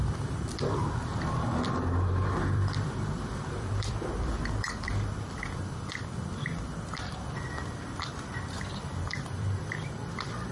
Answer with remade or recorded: remade